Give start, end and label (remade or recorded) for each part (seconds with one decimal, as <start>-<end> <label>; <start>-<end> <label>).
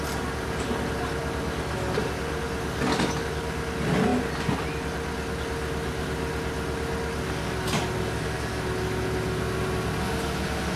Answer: 0.0-10.8 recorded